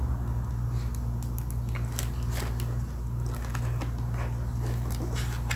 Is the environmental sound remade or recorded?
recorded